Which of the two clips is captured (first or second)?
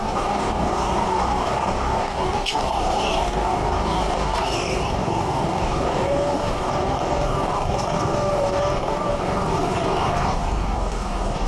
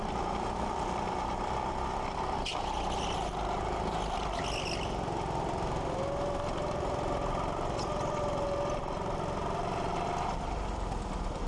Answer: second